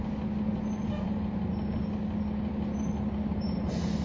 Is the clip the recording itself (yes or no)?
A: yes